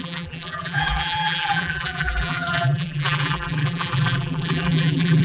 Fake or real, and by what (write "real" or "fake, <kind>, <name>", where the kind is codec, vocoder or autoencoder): fake, vocoder, BigVGAN v2